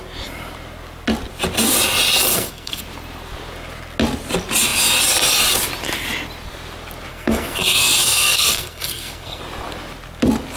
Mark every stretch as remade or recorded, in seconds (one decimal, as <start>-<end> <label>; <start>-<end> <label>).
0.0-2.3 recorded; 2.3-2.8 remade; 2.8-7.1 recorded; 7.1-9.4 remade; 9.4-10.6 recorded